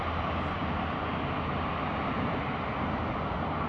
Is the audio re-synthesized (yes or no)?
no